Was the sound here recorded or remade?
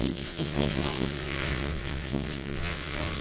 remade